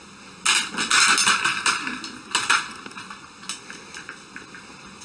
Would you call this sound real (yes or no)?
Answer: yes